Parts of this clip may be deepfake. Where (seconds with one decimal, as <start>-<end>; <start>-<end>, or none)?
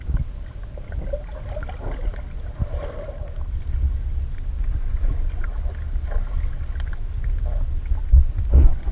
none